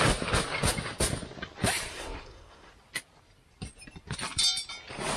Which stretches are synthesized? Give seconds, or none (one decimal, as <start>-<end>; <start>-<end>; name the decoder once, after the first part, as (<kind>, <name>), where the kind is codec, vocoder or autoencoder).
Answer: 1.9-2.7 (codec, SNAC)